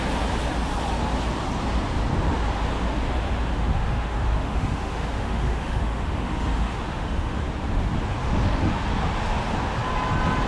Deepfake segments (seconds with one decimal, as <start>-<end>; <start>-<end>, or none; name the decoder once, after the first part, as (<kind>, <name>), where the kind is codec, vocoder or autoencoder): 3.5-7.4 (autoencoder, DAC-VAE); 8.2-8.7